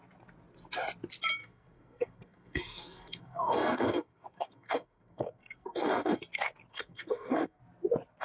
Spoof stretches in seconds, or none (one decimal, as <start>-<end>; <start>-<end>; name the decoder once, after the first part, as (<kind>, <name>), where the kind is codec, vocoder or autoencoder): 1.4-6.2 (codec, SNAC); 6.7-7.6